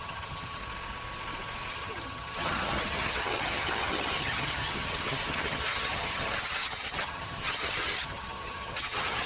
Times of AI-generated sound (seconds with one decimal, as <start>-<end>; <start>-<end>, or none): 0.0-0.6; 1.7-9.3